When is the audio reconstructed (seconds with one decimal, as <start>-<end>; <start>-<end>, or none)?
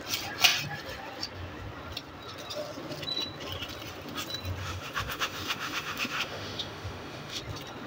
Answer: 4.6-7.4